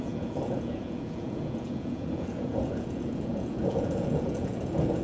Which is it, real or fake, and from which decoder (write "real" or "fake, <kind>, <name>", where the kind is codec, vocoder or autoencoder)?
fake, vocoder, Vocos